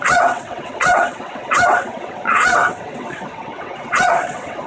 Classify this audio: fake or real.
fake